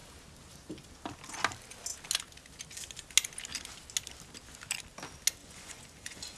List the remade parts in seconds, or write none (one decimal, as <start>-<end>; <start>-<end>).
5.4-6.4